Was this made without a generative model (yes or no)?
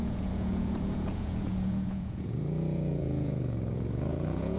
no